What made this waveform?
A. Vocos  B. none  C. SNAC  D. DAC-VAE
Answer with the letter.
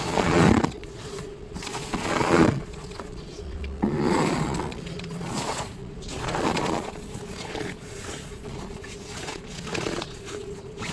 A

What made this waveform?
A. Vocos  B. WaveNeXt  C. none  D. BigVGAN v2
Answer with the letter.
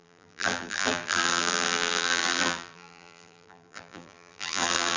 D